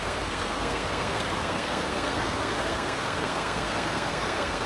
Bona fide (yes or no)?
no